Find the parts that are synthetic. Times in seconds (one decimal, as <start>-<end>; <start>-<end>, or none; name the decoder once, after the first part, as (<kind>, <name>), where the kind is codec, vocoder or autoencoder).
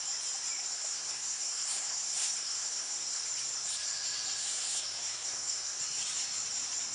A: 0.6-3.2 (codec, SNAC); 4.4-5.8